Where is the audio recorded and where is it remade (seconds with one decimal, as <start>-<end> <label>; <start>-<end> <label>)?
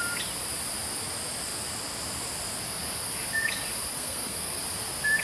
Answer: 0.0-3.9 recorded; 3.9-4.6 remade; 4.6-5.2 recorded